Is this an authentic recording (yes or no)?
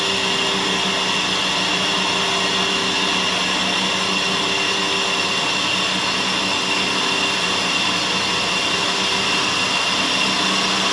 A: yes